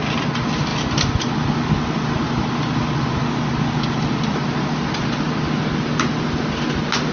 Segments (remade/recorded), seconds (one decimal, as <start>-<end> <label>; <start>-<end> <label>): 0.0-7.1 recorded